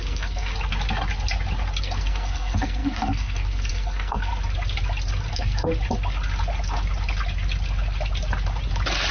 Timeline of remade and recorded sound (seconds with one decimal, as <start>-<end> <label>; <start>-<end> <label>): 0.0-0.5 remade; 0.5-1.8 recorded; 1.8-4.3 remade; 4.3-5.3 recorded; 5.3-5.7 remade; 5.7-9.1 recorded